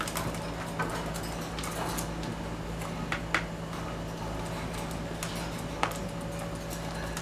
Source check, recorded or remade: recorded